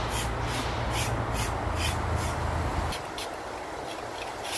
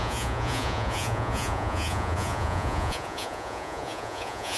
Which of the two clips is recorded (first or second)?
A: first